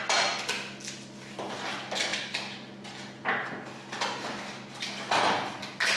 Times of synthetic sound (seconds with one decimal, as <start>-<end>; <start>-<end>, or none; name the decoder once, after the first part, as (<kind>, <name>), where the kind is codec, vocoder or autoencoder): none